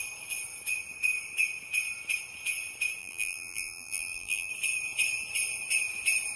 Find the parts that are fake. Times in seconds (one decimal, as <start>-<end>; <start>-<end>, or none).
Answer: 3.0-4.5

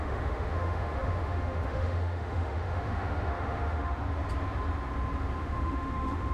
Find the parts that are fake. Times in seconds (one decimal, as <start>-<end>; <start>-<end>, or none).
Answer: 0.0-4.0; 5.4-6.3

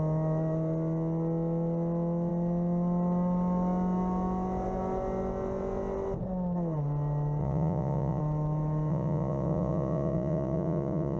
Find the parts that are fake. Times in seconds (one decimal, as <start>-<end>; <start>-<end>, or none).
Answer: 7.4-8.2; 8.9-11.2

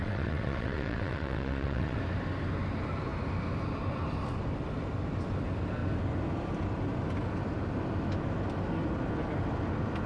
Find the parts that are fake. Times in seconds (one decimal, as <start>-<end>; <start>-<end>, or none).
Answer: 0.0-2.0

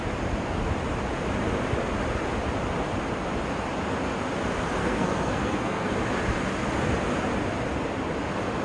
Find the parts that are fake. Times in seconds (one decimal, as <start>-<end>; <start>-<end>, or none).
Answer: 4.8-5.9

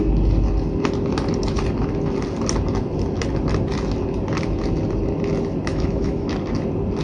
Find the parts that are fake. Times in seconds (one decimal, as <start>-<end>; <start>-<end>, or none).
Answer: 5.7-6.3